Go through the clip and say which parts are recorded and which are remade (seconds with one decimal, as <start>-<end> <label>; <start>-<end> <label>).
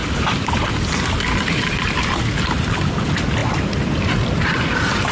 0.0-5.1 recorded